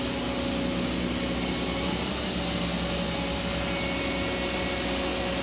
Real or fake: real